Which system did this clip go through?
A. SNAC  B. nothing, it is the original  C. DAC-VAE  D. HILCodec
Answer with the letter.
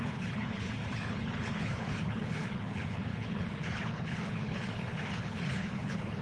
D